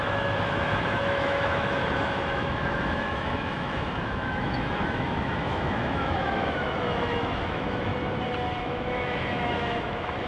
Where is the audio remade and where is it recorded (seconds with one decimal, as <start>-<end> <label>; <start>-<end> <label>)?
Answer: 0.0-7.9 remade; 7.9-8.6 recorded; 8.6-10.3 remade